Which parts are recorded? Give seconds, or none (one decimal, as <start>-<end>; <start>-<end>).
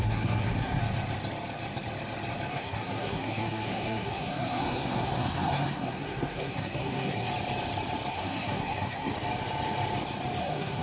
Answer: 0.8-2.5; 7.3-8.1; 9.1-10.4